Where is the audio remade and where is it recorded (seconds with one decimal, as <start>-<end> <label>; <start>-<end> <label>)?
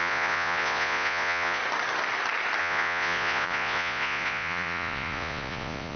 0.0-1.6 remade; 1.6-2.6 recorded; 2.6-6.0 remade